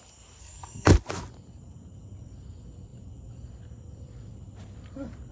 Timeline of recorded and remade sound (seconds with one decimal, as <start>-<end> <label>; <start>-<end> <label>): 0.0-0.4 recorded; 0.4-0.9 remade; 0.9-5.3 recorded